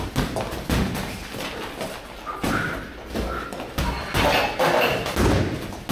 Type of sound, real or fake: real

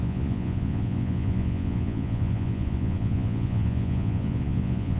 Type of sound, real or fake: fake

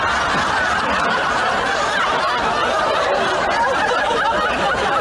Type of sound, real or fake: real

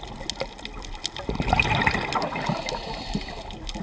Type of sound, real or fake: real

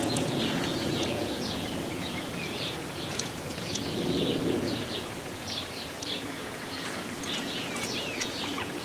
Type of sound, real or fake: fake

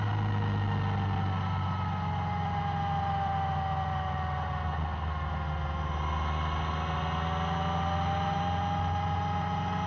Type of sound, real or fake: real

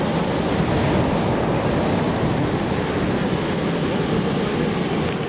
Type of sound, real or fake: real